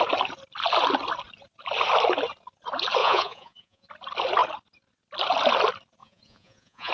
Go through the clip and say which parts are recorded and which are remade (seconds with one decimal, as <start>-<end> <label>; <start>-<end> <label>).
0.0-3.0 recorded; 3.0-3.9 remade; 3.9-6.0 recorded; 6.0-6.9 remade